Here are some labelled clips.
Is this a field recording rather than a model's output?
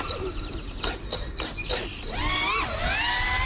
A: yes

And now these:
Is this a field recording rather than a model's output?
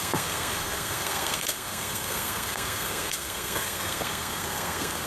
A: no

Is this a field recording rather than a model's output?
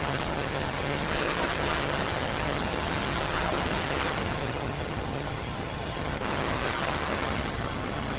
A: no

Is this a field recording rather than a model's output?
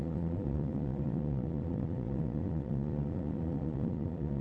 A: no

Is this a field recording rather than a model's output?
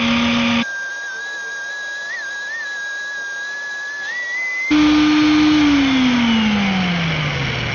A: yes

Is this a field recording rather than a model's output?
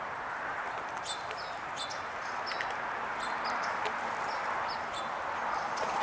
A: yes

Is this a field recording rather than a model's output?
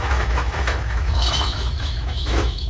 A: no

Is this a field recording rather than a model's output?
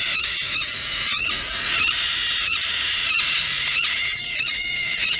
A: no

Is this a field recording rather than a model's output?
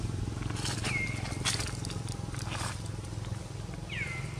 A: yes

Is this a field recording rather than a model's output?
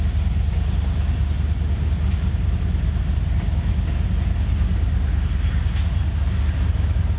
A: yes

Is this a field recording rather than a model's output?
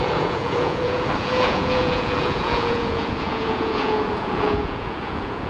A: no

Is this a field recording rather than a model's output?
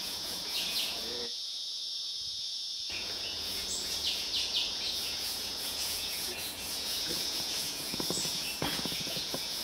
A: no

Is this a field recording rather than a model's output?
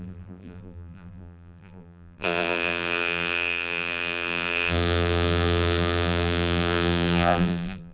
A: no